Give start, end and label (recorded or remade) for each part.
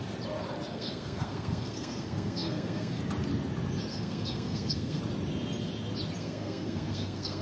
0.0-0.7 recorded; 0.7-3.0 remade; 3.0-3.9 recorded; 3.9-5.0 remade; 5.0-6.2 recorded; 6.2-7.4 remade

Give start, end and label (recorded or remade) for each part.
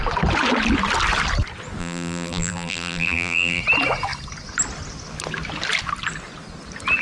0.0-1.8 recorded; 1.8-3.6 remade; 3.6-7.0 recorded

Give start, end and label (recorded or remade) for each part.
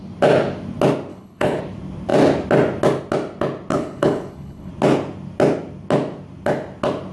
0.0-1.1 recorded; 1.1-1.6 remade; 1.6-3.7 recorded; 3.7-4.7 remade; 4.7-7.1 recorded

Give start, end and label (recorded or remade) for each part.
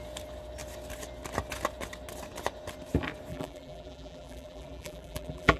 0.0-3.3 recorded; 3.3-5.6 remade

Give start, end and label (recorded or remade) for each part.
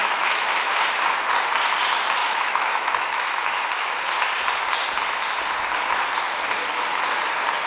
0.0-0.7 remade; 0.7-2.2 recorded; 2.2-4.0 remade; 4.0-7.7 recorded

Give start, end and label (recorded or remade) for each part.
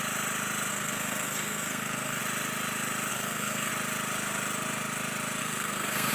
0.0-0.7 recorded; 0.7-2.2 remade; 2.2-3.1 recorded; 3.1-3.7 remade; 3.7-5.4 recorded; 5.4-6.1 remade